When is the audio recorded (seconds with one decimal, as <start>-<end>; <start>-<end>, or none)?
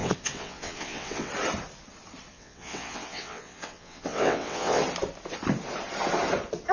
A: 1.3-2.3; 4.8-6.7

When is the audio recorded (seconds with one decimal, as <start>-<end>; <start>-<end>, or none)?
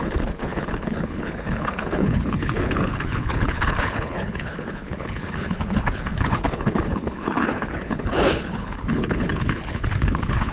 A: none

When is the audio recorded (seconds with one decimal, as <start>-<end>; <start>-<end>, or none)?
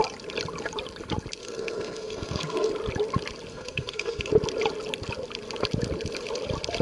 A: 0.0-1.4; 2.7-3.5; 4.3-6.8